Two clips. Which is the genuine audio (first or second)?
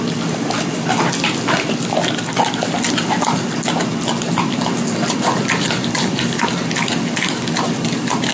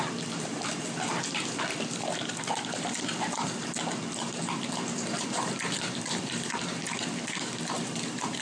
first